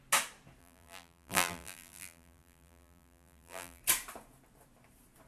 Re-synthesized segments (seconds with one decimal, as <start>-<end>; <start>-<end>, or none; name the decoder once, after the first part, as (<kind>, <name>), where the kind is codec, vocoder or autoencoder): 0.6-3.8 (vocoder, BigVGAN v2)